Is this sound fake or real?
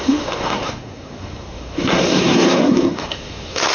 fake